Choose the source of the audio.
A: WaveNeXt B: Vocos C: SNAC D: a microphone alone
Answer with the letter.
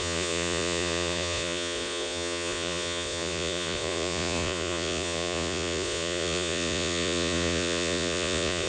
B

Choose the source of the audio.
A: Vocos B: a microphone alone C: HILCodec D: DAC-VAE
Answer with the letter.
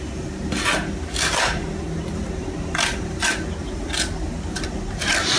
B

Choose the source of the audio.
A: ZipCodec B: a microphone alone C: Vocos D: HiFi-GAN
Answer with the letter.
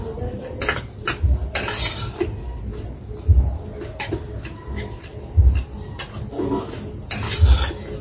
B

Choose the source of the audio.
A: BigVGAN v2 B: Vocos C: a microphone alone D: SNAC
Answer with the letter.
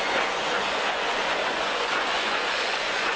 B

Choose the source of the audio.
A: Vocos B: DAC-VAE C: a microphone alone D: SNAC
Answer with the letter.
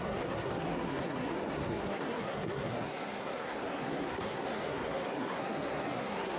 D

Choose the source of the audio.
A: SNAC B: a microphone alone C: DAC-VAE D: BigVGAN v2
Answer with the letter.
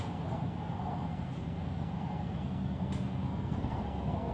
A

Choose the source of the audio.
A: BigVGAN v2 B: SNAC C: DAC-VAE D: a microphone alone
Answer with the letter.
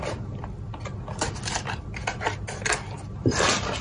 D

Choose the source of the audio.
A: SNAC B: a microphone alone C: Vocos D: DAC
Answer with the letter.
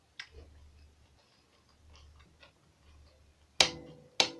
B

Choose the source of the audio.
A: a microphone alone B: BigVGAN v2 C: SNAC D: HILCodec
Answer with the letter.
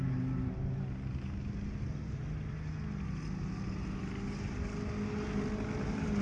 A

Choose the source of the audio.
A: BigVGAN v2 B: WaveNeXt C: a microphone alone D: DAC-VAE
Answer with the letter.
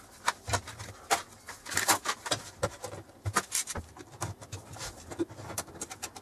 C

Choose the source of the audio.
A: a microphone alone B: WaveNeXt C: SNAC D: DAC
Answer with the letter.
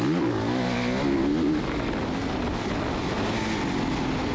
A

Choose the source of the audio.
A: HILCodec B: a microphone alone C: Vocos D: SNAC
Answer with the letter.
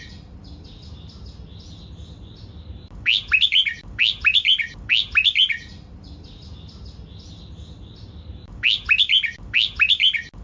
B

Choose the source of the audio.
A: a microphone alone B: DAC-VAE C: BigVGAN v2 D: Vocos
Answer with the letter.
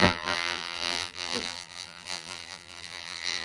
C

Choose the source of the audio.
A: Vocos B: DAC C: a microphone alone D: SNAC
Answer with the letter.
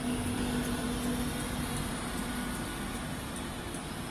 C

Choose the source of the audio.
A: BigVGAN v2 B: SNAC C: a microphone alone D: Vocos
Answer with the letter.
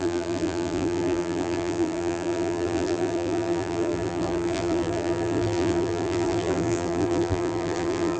A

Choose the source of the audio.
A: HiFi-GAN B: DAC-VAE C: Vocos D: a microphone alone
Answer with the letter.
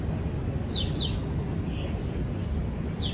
D